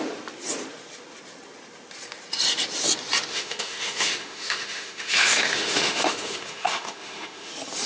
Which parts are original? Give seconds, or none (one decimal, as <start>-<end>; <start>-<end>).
0.0-3.3; 7.5-7.9